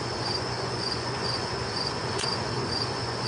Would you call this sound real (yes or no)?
no